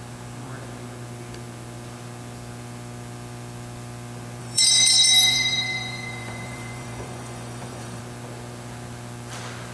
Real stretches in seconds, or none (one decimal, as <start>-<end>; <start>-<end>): 0.0-4.4; 8.0-9.7